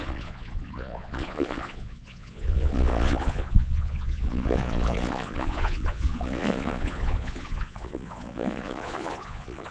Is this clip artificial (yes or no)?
yes